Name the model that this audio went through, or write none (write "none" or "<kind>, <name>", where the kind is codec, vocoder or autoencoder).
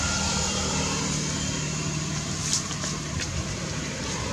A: none